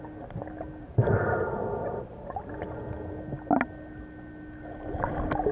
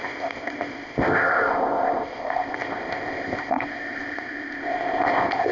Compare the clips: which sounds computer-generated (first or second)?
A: second